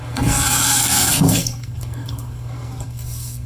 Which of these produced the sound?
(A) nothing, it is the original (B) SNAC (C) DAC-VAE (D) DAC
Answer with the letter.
B